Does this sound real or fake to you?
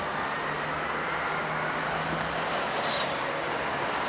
real